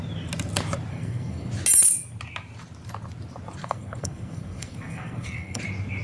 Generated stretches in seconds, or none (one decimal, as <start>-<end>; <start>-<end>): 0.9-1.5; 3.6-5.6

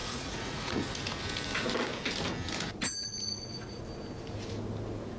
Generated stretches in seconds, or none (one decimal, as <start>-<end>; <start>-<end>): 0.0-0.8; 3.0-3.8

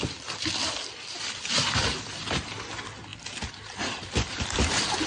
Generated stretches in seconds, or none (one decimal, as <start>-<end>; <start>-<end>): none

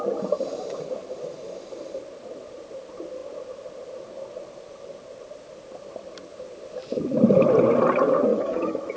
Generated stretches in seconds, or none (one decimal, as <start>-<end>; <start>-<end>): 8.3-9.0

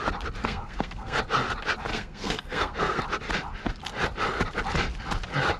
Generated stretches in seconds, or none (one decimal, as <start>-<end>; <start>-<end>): 0.4-1.2; 1.9-3.0

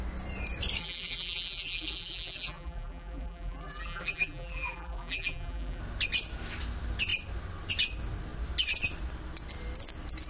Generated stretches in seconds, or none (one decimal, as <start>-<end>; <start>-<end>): 0.8-5.8

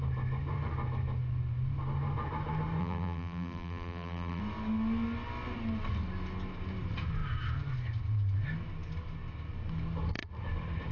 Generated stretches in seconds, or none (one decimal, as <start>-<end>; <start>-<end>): 2.8-4.4